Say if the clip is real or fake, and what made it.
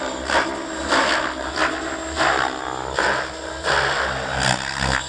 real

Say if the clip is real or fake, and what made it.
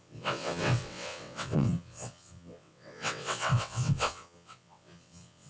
fake, vocoder, WaveNeXt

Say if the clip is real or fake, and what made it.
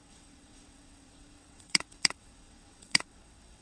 fake, vocoder, WaveNeXt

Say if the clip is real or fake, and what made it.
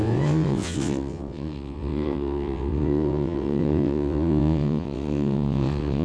fake, vocoder, WaveNeXt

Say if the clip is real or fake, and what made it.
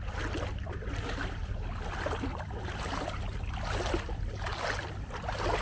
real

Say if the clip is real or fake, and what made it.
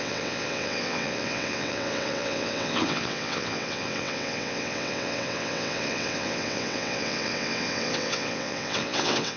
fake, vocoder, WaveNeXt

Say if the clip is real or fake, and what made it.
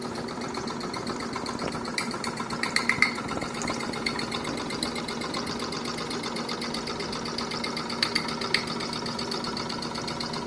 real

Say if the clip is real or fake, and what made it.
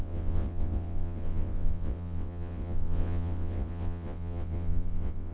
fake, vocoder, WaveNeXt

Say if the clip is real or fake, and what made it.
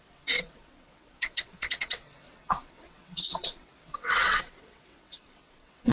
fake, vocoder, WaveNeXt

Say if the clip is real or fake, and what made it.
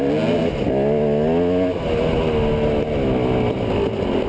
real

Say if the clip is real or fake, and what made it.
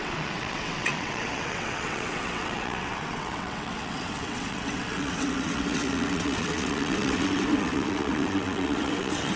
fake, vocoder, WaveNeXt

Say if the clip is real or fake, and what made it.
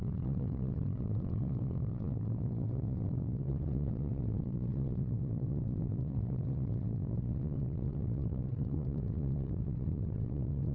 fake, vocoder, WaveNeXt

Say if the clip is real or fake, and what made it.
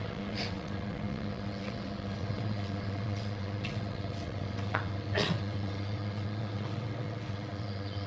fake, vocoder, WaveNeXt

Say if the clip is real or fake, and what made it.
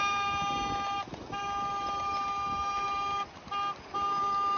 real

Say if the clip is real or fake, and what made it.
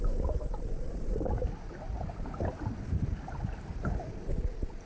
real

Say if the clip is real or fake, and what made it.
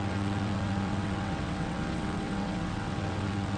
fake, vocoder, WaveNeXt